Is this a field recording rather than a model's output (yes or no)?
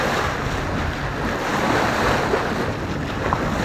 yes